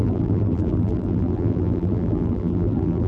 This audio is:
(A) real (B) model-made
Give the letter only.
B